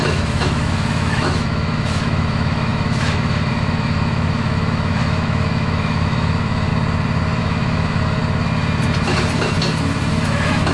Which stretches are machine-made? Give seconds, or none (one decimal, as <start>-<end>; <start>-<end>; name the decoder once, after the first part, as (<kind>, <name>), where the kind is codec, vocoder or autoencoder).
0.0-6.7 (autoencoder, DAC-VAE); 7.4-8.2; 10.1-10.7